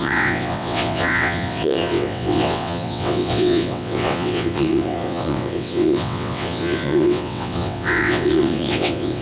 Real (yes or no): no